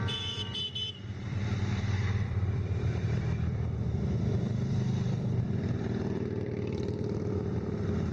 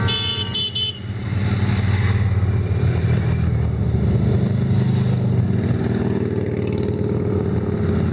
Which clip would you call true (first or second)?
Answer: second